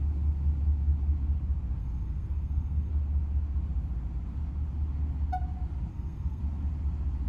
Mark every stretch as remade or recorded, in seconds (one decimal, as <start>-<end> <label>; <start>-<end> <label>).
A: 0.0-1.8 recorded; 1.8-2.9 remade; 2.9-5.9 recorded; 5.9-6.4 remade; 6.4-7.3 recorded